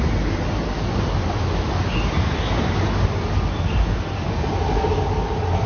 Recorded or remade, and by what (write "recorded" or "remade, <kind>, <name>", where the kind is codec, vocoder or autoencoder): recorded